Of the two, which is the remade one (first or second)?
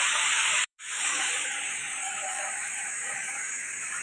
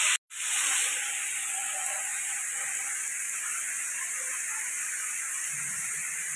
first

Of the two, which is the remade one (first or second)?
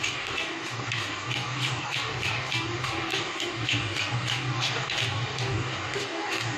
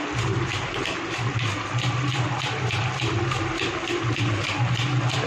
first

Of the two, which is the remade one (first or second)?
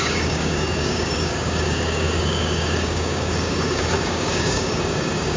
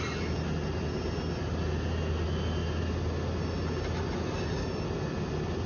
first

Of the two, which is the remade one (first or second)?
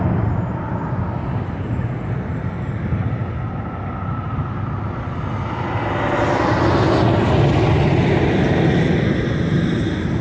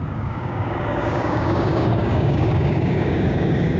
second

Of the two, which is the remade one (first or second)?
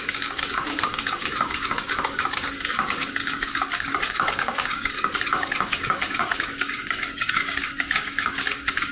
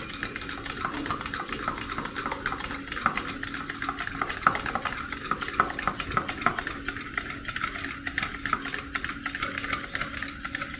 first